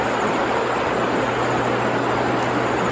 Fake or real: real